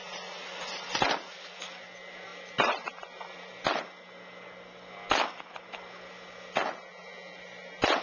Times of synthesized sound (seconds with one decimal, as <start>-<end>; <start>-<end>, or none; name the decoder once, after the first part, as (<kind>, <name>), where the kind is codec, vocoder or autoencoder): none